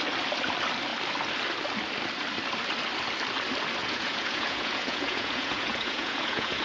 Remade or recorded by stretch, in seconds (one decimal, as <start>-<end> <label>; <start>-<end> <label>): 0.0-3.8 recorded; 3.8-6.6 remade